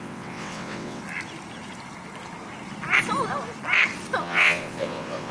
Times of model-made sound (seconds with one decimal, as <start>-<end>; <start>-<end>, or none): 0.0-1.0; 4.2-5.3